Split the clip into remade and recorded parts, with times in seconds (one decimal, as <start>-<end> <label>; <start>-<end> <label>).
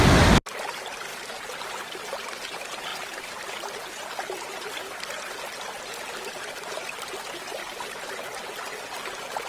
0.0-1.1 recorded; 1.1-1.8 remade; 1.8-2.9 recorded; 2.9-3.9 remade; 3.9-7.6 recorded; 7.6-8.1 remade; 8.1-9.5 recorded